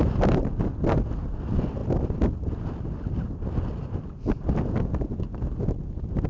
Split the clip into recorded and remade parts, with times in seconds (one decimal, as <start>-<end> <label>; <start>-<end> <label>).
0.0-6.3 recorded